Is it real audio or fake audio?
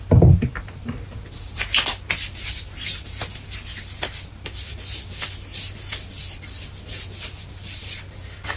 real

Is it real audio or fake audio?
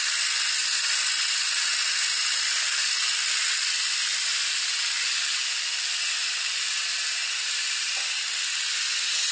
real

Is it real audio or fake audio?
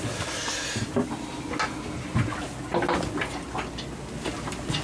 real